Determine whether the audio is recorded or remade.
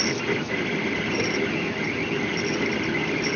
recorded